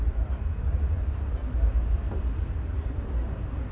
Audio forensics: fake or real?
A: real